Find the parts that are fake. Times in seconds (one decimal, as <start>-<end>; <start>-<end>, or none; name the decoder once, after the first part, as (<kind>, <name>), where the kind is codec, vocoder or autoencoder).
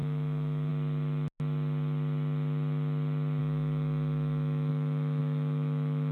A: 0.0-0.7 (autoencoder, DAC-VAE); 3.4-6.1